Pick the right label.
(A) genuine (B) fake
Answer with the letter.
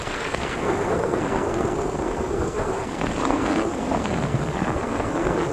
B